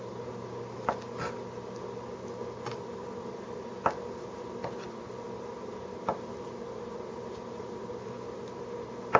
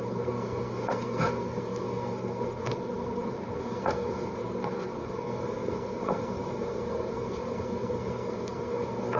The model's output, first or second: second